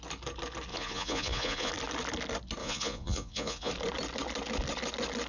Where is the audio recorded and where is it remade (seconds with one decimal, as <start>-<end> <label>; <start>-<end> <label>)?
0.0-0.7 recorded; 0.7-1.7 remade; 1.7-2.6 recorded; 2.6-3.7 remade; 3.7-5.3 recorded

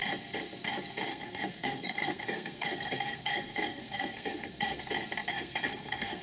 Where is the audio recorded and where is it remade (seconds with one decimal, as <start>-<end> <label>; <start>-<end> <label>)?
0.0-1.1 recorded; 1.1-4.8 remade; 4.8-5.3 recorded; 5.3-6.2 remade

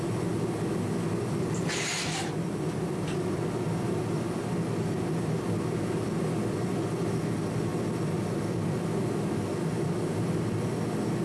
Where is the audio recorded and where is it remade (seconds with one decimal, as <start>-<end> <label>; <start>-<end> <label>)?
0.0-11.2 recorded

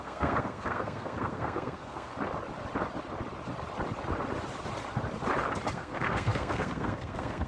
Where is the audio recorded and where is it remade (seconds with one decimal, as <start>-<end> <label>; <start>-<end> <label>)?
0.0-2.1 remade; 2.1-5.7 recorded; 5.7-7.5 remade